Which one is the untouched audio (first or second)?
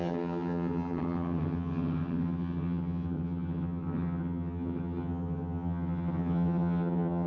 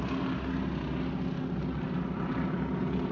second